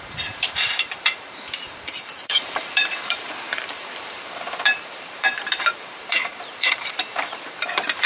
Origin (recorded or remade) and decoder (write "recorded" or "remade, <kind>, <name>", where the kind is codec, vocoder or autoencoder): remade, vocoder, BigVGAN v2